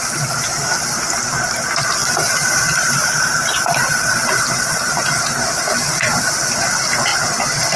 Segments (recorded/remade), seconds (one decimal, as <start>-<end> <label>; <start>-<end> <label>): 0.0-2.0 recorded; 2.0-6.3 remade; 6.3-7.1 recorded; 7.1-7.8 remade